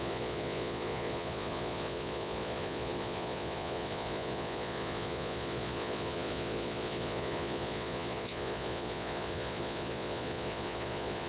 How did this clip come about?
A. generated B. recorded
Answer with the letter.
A